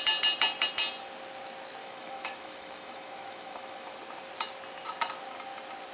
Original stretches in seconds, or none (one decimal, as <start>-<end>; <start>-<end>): 0.0-1.8; 4.0-5.9